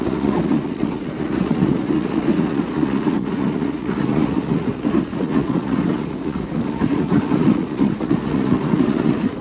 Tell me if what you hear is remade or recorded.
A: remade